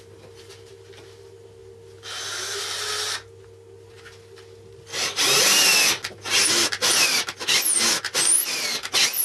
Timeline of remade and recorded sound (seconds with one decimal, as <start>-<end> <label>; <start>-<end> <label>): 0.0-9.2 recorded